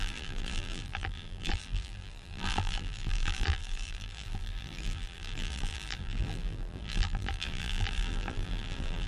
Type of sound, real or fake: fake